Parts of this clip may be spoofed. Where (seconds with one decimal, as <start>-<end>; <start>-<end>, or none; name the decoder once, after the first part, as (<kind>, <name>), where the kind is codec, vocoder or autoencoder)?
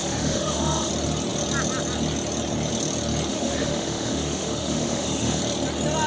0.0-0.9 (autoencoder, DAC-VAE); 3.3-5.4